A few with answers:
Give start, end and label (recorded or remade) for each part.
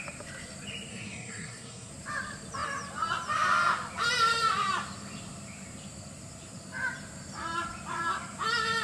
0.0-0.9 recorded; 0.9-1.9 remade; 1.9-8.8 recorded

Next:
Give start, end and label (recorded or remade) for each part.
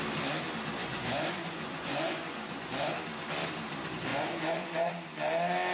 0.0-0.8 recorded; 0.8-2.9 remade; 2.9-4.1 recorded; 4.1-4.9 remade; 4.9-5.7 recorded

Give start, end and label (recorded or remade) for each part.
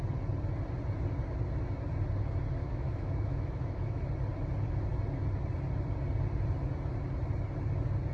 0.0-2.6 recorded; 2.6-4.0 remade; 4.0-8.1 recorded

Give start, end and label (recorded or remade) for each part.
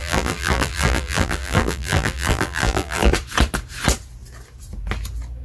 0.0-3.1 remade; 3.1-5.4 recorded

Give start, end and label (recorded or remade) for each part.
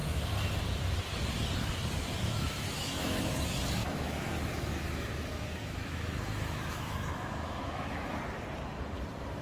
0.0-2.1 recorded; 2.1-3.3 remade; 3.3-3.8 recorded; 3.8-8.2 remade; 8.2-9.4 recorded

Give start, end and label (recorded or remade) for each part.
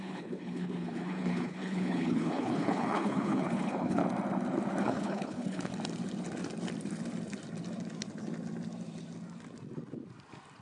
0.0-4.0 remade; 4.0-4.8 recorded; 4.8-5.7 remade; 5.7-10.6 recorded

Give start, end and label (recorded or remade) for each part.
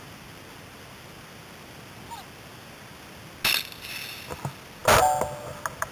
0.0-5.9 recorded